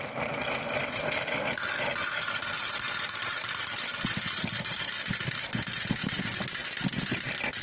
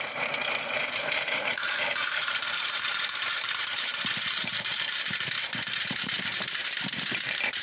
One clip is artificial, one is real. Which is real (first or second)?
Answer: first